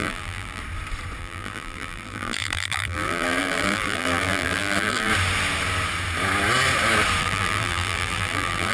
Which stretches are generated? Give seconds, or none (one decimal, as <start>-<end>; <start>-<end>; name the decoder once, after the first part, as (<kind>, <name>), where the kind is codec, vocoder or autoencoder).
0.0-0.6 (vocoder, BigVGAN v2); 1.2-5.1; 7.2-8.7